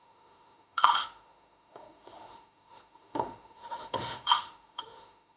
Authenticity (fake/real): fake